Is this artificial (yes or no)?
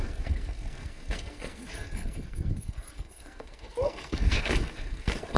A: yes